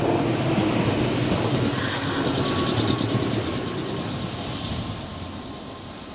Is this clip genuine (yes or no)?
yes